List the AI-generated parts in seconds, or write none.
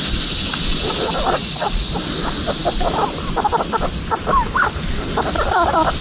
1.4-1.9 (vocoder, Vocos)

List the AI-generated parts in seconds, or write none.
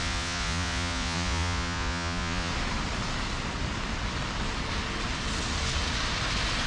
0.0-2.5 (vocoder, Vocos)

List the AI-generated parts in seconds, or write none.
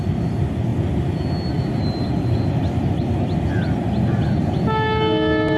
none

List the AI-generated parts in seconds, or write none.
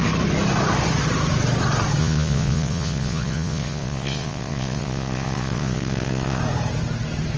2.0-6.4 (vocoder, Vocos)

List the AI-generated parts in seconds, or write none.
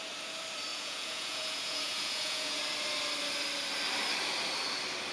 0.7-2.6 (vocoder, Vocos)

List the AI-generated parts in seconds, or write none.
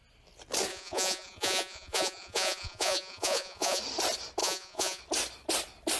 0.7-3.8 (vocoder, Vocos); 4.4-5.0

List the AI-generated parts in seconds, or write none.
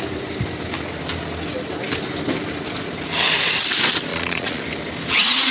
4.1-4.6 (vocoder, Vocos)